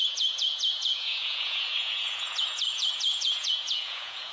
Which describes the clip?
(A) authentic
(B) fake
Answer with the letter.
B